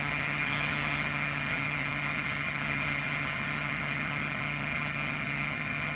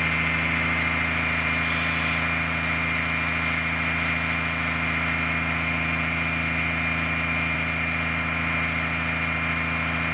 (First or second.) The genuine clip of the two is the second